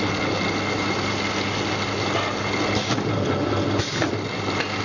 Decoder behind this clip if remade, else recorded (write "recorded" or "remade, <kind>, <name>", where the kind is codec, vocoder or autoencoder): recorded